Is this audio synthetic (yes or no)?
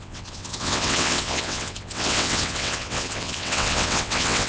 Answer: yes